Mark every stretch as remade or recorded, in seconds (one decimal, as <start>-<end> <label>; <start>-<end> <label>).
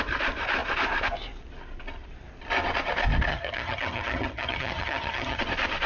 0.0-3.3 recorded; 3.3-5.4 remade; 5.4-5.9 recorded